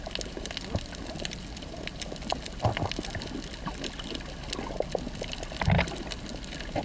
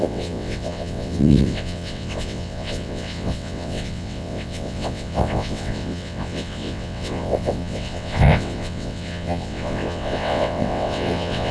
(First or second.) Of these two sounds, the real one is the first